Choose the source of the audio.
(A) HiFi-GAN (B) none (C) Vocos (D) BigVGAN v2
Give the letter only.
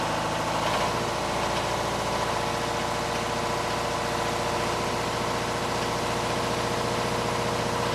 B